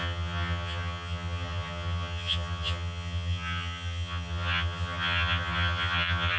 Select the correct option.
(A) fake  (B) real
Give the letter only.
A